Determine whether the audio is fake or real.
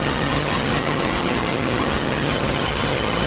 fake